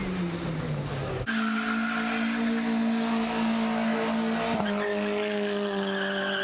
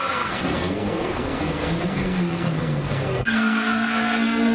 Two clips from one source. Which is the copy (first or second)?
second